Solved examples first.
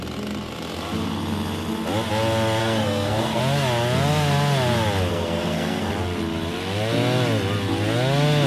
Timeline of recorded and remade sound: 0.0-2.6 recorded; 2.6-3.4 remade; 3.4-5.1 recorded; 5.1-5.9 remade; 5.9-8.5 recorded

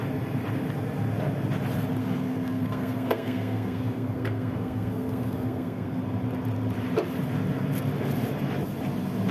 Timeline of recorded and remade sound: 0.0-2.0 recorded; 2.0-6.0 remade; 6.0-9.3 recorded

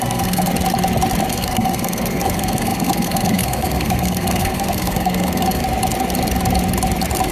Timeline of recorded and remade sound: 0.0-0.5 remade; 0.5-1.3 recorded; 1.3-5.6 remade; 5.6-7.3 recorded